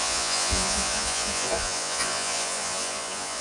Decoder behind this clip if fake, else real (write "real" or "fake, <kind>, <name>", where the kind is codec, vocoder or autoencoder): fake, vocoder, Vocos